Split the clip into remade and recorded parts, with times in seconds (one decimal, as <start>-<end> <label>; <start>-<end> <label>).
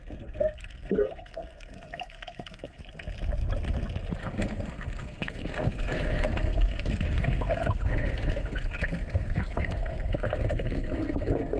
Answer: 0.0-2.8 remade; 2.8-4.2 recorded; 4.2-11.6 remade